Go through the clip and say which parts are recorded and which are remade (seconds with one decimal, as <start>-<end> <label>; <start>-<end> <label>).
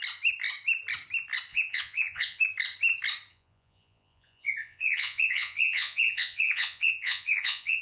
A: 0.0-1.5 recorded; 1.5-2.4 remade; 2.4-3.3 recorded; 3.3-7.8 remade